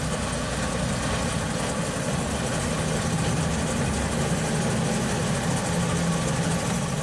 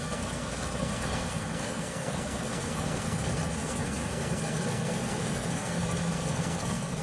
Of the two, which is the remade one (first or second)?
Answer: second